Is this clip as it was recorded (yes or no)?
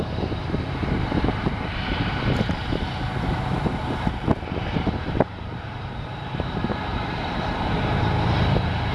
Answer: no